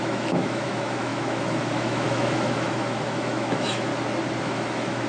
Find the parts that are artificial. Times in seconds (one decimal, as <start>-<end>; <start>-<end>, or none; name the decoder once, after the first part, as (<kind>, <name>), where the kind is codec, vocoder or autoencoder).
0.0-3.9 (autoencoder, DAC-VAE); 4.4-5.1

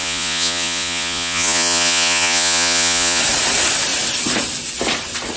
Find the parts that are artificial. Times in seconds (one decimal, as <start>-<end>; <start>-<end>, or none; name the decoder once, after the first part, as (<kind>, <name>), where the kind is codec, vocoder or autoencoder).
0.0-3.2 (vocoder, Vocos)